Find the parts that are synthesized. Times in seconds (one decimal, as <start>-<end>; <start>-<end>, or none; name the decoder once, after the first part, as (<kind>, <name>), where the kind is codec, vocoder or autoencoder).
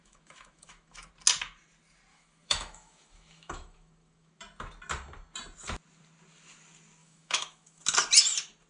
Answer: 0.0-1.1 (autoencoder, DAC-VAE); 2.1-4.4; 7.0-7.8